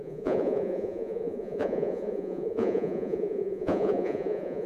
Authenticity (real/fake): fake